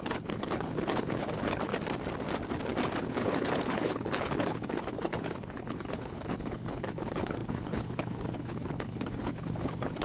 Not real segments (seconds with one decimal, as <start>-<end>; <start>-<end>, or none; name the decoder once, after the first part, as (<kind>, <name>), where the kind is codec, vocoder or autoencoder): 0.0-1.7 (codec, HILCodec); 3.0-10.0